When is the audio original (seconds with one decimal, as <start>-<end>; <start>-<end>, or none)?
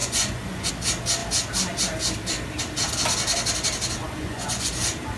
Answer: 0.7-4.0; 4.7-5.2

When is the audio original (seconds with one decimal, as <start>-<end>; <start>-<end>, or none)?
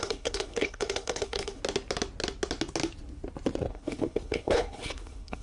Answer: 1.6-3.7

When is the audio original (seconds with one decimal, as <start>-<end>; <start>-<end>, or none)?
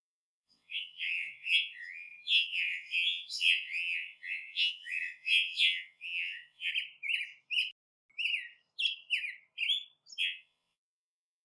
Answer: 6.7-10.2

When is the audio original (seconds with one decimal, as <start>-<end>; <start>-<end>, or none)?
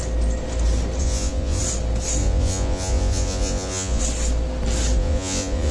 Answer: 0.0-1.0; 1.6-2.2; 4.0-5.0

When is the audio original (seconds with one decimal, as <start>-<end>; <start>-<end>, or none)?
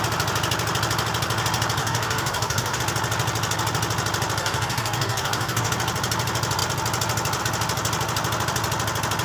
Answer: 0.0-1.8; 2.8-4.4; 5.7-9.2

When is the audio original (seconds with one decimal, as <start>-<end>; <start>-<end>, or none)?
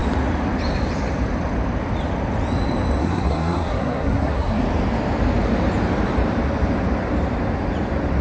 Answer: 0.0-3.0; 4.6-8.2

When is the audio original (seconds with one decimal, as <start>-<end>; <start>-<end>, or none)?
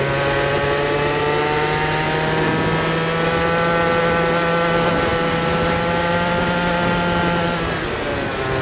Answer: 0.0-8.6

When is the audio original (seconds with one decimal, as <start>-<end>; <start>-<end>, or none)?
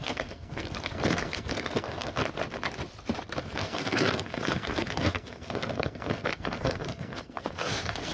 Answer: 2.2-3.4